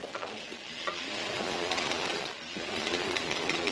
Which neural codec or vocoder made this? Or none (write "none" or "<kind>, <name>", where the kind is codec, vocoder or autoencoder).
vocoder, Vocos